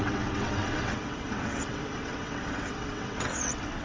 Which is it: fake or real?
fake